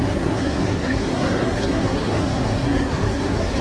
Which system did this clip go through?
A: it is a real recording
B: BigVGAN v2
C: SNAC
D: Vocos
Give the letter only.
C